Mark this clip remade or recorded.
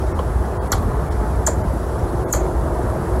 recorded